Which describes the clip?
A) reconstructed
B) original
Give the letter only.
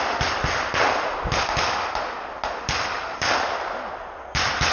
B